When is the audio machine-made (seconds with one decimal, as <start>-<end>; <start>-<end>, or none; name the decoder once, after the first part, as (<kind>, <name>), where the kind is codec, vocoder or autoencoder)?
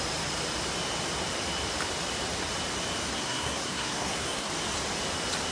3.1-4.5 (codec, SNAC)